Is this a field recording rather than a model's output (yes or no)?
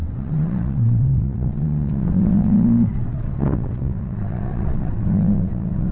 no